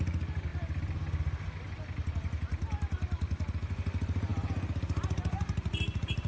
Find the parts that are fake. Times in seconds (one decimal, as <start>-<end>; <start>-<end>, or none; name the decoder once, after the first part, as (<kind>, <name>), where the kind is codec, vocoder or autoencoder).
none